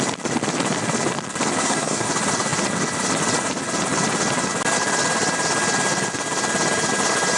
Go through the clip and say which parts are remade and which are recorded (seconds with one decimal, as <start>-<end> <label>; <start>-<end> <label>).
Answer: 0.0-1.6 recorded; 1.6-2.1 remade; 2.1-7.4 recorded